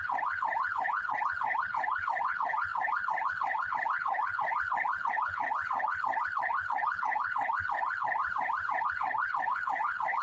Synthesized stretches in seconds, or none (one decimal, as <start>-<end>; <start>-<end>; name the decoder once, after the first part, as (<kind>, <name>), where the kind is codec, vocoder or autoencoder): 0.0-8.2 (codec, HILCodec); 8.8-10.2